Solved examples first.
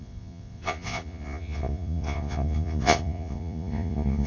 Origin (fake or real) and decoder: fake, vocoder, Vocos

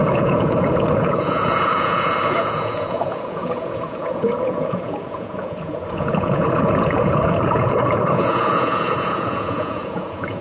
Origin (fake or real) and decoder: fake, vocoder, Vocos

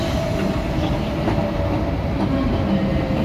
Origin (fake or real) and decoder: real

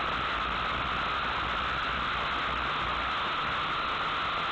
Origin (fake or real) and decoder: real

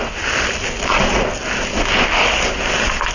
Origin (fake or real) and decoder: real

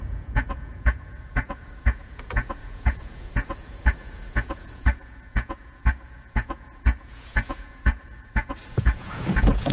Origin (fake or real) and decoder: fake, vocoder, Vocos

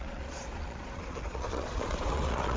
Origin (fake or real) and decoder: fake, vocoder, Vocos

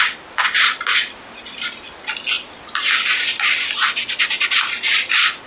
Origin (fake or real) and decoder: real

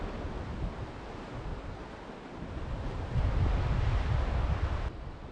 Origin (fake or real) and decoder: real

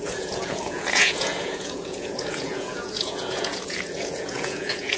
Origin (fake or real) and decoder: fake, vocoder, Vocos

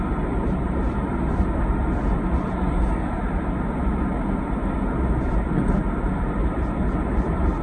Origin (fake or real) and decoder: real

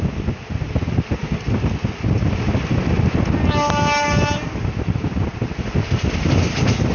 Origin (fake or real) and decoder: real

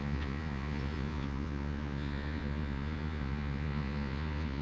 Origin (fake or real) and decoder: fake, vocoder, Vocos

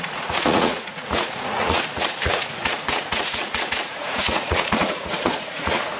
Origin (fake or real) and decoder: fake, vocoder, Vocos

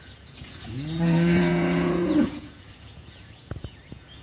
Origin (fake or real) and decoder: fake, vocoder, Vocos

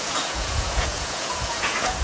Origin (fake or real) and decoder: fake, vocoder, Vocos